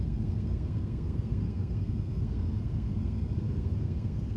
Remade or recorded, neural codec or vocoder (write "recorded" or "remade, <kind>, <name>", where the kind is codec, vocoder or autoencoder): remade, codec, SNAC